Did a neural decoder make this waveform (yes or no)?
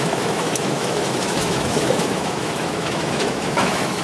yes